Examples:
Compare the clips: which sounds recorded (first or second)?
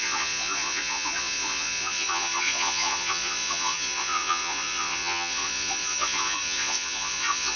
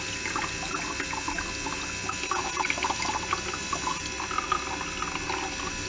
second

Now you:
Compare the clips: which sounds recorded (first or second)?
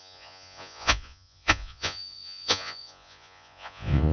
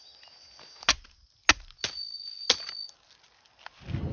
second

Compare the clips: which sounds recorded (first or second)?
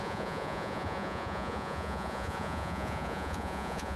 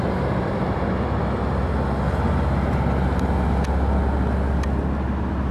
second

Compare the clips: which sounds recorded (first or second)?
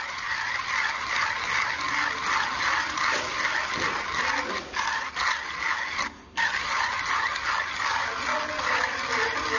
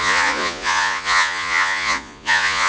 first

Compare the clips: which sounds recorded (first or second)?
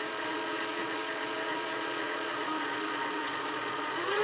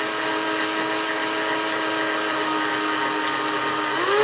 second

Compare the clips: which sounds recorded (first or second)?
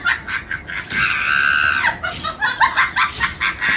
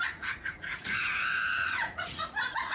first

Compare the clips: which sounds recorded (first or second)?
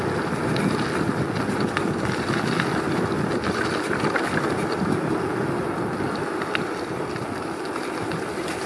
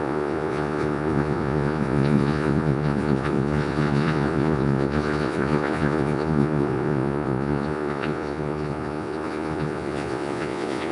first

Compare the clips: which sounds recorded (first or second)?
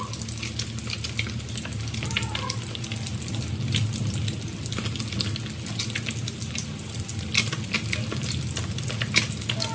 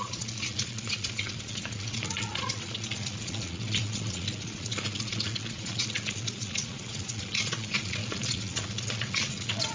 first